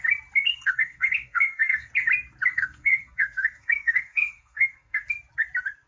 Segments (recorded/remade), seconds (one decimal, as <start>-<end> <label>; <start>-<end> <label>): 0.0-0.5 recorded; 0.5-1.9 remade; 1.9-2.5 recorded; 2.5-5.0 remade; 5.0-5.9 recorded